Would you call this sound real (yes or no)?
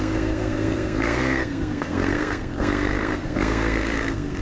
no